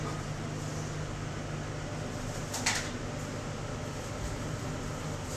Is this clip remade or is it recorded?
recorded